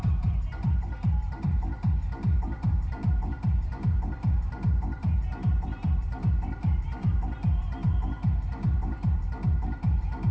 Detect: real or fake fake